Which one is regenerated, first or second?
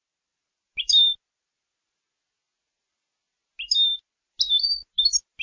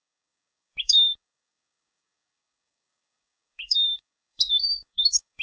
second